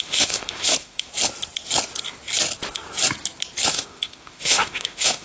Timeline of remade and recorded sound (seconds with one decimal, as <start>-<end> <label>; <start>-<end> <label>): 0.0-1.1 remade; 1.1-3.7 recorded; 3.7-5.2 remade